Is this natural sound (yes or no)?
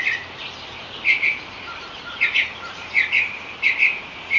no